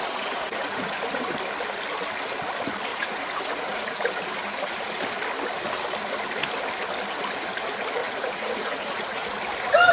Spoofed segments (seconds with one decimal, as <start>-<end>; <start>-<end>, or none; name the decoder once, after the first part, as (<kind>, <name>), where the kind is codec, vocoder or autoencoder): 0.0-1.3 (vocoder, Vocos); 2.9-4.2; 8.0-9.3